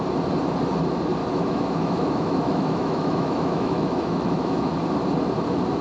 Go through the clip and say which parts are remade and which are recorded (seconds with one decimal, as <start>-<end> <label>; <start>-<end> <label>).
0.0-1.2 recorded; 1.2-4.7 remade; 4.7-5.8 recorded